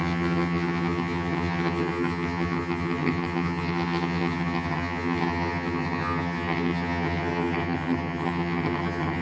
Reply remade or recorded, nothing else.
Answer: remade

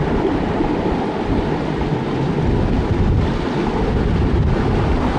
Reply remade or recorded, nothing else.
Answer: recorded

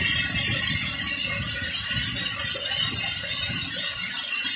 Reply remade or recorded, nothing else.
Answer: recorded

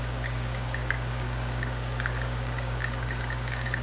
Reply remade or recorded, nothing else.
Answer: remade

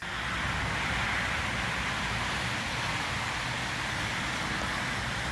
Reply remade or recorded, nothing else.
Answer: recorded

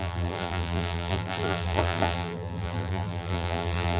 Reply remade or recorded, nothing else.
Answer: remade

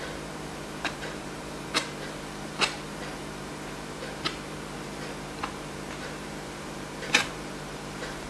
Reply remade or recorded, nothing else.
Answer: remade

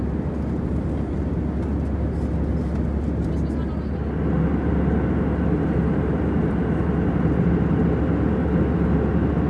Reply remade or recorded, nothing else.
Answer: recorded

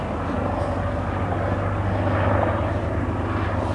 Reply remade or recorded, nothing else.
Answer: recorded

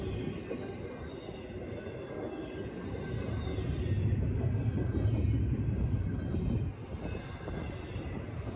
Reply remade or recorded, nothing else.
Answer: recorded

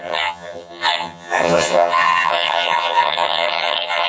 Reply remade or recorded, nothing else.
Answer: remade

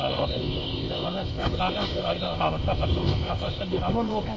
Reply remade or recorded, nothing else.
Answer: remade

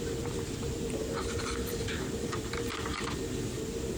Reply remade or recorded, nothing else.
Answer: recorded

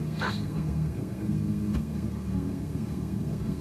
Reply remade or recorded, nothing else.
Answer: remade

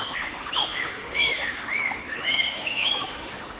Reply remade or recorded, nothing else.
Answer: remade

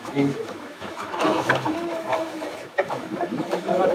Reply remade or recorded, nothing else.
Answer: remade